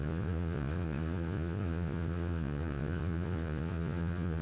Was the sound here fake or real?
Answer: fake